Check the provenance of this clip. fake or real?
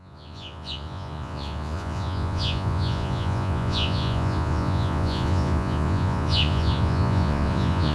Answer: fake